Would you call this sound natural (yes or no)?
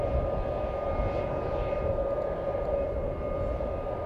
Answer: yes